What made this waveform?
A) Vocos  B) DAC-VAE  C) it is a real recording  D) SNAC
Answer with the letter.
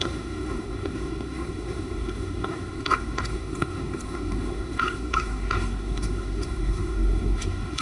D